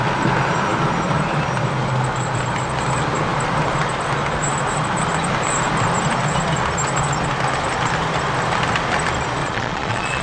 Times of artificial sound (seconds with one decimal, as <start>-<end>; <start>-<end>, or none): 9.4-10.2